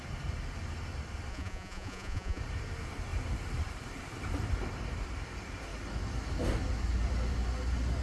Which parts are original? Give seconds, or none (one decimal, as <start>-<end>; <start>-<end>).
0.0-1.3; 2.4-8.0

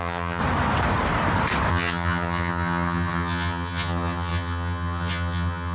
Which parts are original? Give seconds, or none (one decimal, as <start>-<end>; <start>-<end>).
0.4-1.7